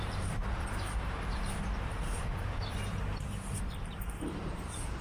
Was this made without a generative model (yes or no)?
no